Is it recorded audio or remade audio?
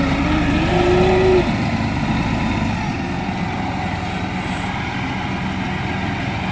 recorded